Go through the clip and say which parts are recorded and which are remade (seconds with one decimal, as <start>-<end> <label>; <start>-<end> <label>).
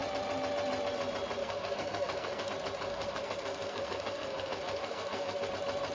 0.0-1.4 recorded; 1.4-2.5 remade; 2.5-2.9 recorded; 2.9-5.5 remade; 5.5-5.9 recorded